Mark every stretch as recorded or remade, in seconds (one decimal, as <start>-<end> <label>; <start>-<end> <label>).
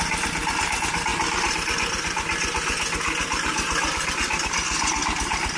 0.0-5.6 recorded